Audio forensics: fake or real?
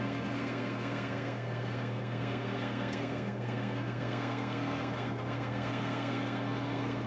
fake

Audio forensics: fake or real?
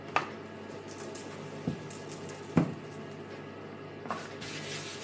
real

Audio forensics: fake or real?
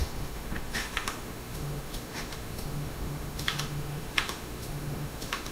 fake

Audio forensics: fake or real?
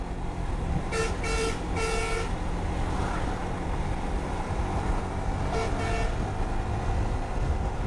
real